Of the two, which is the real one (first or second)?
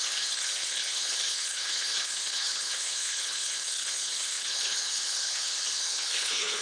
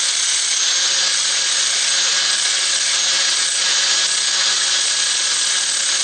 second